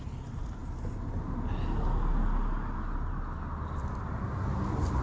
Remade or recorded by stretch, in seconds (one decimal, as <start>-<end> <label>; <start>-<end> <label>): 0.0-5.0 recorded